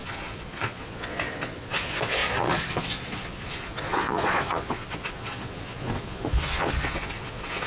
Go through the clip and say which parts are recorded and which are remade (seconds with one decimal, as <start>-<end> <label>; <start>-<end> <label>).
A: 0.0-7.7 remade

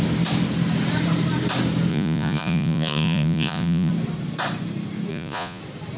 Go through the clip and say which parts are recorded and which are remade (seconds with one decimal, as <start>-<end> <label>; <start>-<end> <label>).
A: 0.0-1.9 recorded; 1.9-3.9 remade; 3.9-5.1 recorded; 5.1-5.6 remade; 5.6-6.0 recorded

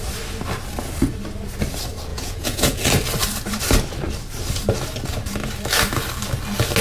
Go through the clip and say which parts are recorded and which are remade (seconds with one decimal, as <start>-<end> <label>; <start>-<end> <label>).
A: 0.0-2.1 recorded; 2.1-2.8 remade; 2.8-6.8 recorded

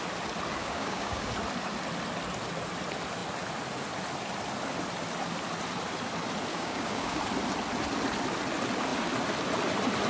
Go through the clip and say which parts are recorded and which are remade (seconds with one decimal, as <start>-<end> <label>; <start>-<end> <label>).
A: 0.0-0.6 recorded; 0.6-1.3 remade; 1.3-6.5 recorded; 6.5-7.2 remade; 7.2-10.1 recorded

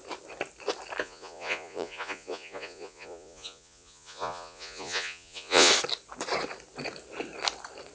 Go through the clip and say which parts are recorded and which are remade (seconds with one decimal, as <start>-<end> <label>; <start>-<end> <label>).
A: 0.0-1.0 recorded; 1.0-5.7 remade; 5.7-7.9 recorded

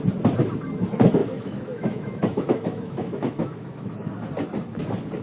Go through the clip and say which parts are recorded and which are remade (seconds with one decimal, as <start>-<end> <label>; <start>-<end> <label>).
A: 0.0-1.2 recorded; 1.2-4.3 remade; 4.3-5.2 recorded

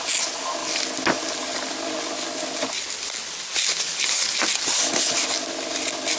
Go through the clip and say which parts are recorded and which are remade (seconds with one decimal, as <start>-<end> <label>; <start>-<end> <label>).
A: 0.0-6.2 recorded